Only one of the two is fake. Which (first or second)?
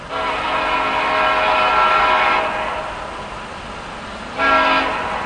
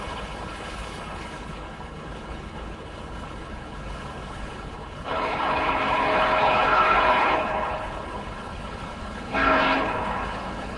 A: second